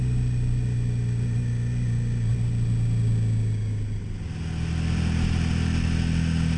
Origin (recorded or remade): recorded